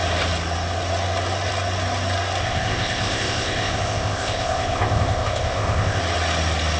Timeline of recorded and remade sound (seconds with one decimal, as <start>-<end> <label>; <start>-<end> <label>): 0.0-2.4 recorded; 2.4-6.0 remade; 6.0-6.8 recorded